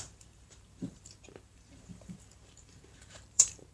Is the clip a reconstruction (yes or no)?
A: yes